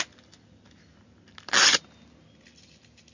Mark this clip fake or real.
real